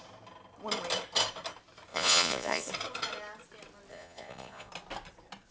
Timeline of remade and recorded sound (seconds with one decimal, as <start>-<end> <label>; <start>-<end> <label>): 0.0-1.9 recorded; 1.9-2.7 remade; 2.7-3.9 recorded; 3.9-4.7 remade; 4.7-5.5 recorded